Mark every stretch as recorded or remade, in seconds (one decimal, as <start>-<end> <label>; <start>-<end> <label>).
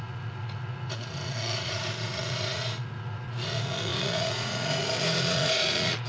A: 0.0-6.1 remade